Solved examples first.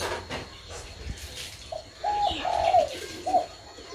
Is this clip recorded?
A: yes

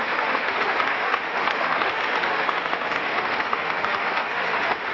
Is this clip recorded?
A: no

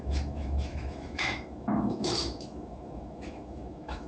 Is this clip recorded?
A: no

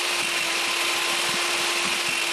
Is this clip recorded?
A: yes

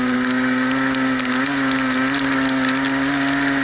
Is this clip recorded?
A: yes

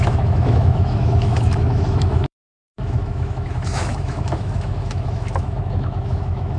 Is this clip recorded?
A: no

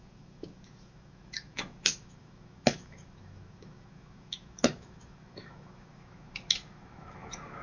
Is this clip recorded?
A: no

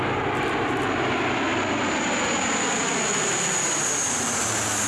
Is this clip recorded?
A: yes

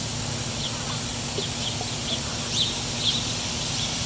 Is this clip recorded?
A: yes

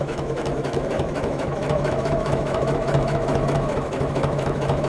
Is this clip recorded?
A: no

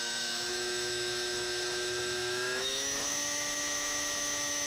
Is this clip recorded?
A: no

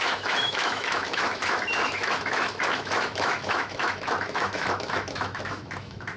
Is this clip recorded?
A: no